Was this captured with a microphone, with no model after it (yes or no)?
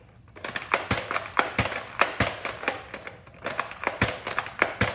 yes